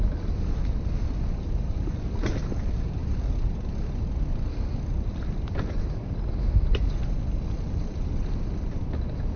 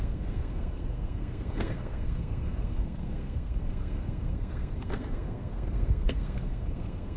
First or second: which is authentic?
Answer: first